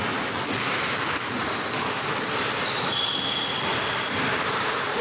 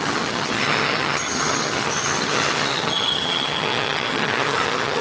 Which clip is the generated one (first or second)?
second